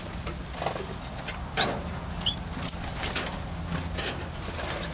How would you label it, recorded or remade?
recorded